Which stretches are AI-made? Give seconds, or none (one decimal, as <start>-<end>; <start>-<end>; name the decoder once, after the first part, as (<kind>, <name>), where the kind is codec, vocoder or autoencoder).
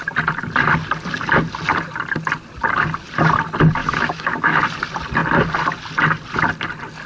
3.8-4.6 (autoencoder, DAC-VAE)